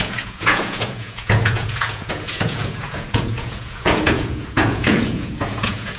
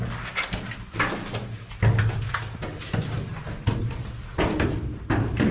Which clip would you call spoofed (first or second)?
first